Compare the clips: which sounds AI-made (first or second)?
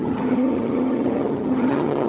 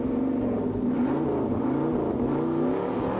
first